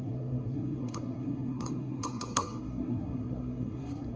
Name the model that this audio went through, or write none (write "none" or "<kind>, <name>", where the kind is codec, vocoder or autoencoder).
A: codec, SNAC